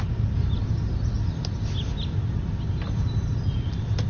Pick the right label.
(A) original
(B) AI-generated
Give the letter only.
A